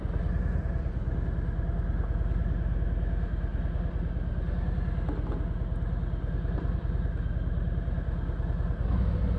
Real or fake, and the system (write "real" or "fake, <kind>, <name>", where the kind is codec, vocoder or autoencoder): real